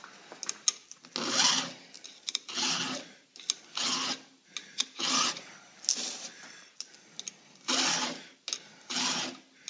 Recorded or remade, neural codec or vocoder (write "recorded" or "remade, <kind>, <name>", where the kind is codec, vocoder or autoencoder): recorded